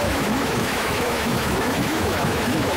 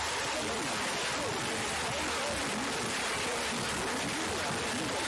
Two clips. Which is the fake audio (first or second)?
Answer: first